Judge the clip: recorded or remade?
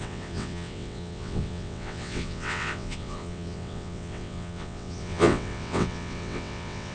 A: remade